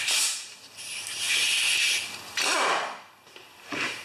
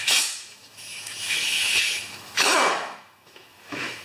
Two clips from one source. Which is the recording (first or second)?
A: first